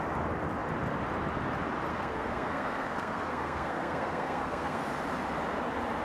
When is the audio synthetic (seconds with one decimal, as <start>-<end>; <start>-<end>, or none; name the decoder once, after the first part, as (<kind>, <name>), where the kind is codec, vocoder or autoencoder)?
1.9-4.8 (codec, SNAC)